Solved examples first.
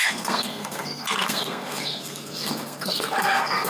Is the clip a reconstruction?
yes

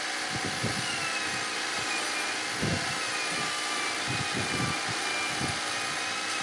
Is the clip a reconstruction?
no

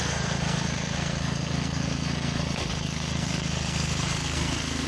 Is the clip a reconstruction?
yes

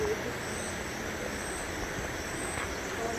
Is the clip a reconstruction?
no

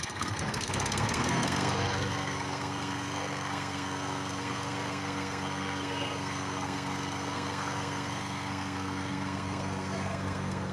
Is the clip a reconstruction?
yes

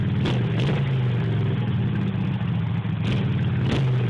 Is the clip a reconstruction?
no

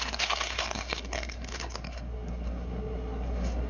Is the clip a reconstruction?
yes